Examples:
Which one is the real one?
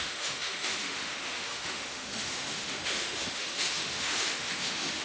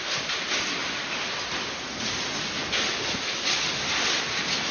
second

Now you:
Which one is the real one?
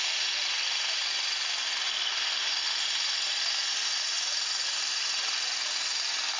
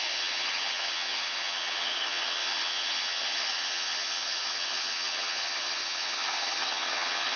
first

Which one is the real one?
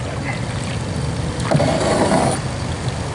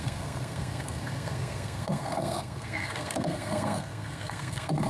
first